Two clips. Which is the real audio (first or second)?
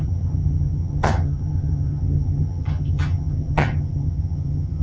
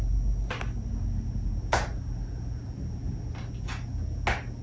second